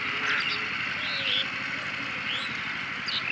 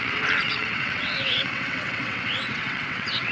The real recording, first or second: first